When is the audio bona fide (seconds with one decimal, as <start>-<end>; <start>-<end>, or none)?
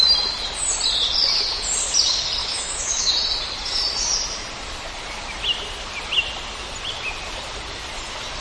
0.0-2.4; 3.1-8.4